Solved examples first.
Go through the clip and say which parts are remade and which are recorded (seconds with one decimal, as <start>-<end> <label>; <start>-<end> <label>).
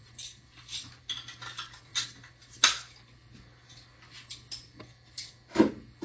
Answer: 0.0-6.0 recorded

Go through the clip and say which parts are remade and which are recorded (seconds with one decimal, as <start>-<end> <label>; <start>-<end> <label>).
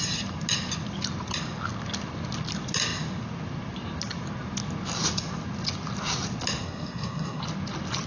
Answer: 0.0-6.6 recorded; 6.6-7.4 remade; 7.4-8.1 recorded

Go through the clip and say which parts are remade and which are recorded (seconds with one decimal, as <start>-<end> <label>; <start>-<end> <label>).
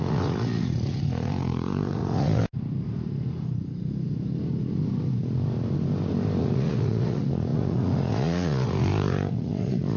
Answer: 0.0-2.4 remade; 2.4-6.4 recorded; 6.4-10.0 remade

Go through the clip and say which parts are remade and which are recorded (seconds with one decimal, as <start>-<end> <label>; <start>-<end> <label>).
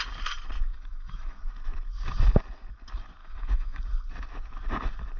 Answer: 0.0-0.7 recorded; 0.7-1.4 remade; 1.4-3.2 recorded; 3.2-3.8 remade; 3.8-5.2 recorded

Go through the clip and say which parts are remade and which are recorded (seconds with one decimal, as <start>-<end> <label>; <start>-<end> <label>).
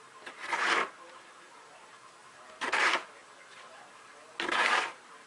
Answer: 0.0-1.8 remade; 1.8-2.8 recorded; 2.8-3.2 remade; 3.2-4.5 recorded; 4.5-5.3 remade